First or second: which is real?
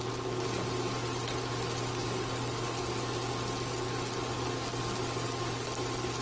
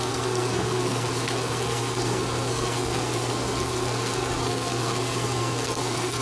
first